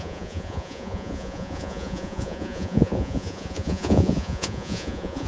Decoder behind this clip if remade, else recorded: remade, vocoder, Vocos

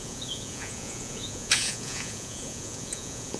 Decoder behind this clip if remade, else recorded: remade, vocoder, Vocos